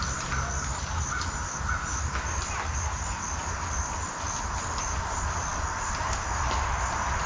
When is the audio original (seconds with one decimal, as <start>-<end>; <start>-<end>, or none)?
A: 0.0-7.3